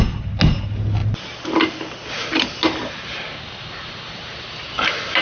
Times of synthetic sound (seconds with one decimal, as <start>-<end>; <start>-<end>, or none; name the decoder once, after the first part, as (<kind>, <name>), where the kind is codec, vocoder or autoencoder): none